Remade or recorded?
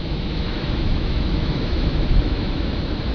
remade